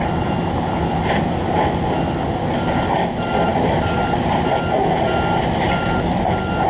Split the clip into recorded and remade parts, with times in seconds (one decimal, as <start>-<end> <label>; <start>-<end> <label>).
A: 0.0-6.7 recorded